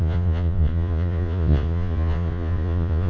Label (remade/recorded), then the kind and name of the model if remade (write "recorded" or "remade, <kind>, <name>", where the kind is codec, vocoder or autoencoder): remade, vocoder, Vocos